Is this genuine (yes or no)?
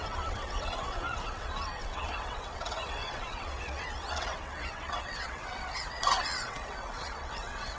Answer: no